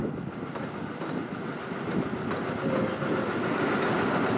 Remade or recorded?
recorded